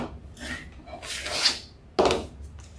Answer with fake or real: real